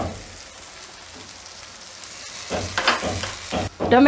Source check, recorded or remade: recorded